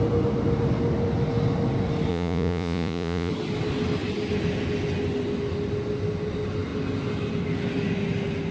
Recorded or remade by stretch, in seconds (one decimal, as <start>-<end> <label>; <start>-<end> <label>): 0.0-2.1 recorded; 2.1-3.3 remade; 3.3-8.5 recorded